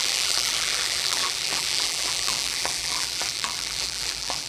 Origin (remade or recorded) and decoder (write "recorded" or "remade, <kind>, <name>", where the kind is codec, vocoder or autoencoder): remade, vocoder, BigVGAN v2